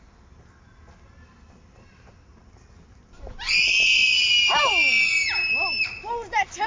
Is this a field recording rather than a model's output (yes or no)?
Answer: yes